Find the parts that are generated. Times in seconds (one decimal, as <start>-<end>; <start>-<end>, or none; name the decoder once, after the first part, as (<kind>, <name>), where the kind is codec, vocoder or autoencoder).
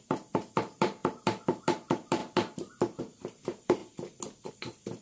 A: 0.0-3.8 (vocoder, BigVGAN v2); 4.5-5.0